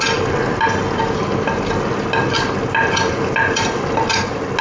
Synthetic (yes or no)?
no